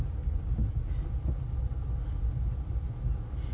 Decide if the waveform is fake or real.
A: real